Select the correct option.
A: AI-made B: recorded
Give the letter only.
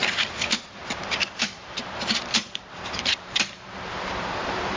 A